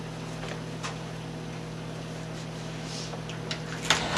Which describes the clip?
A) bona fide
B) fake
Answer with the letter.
A